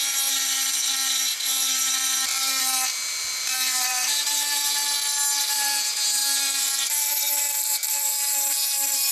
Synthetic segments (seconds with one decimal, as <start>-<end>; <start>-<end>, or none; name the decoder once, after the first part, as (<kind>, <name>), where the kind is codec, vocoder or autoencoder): 0.0-4.8 (vocoder, BigVGAN v2); 5.4-9.1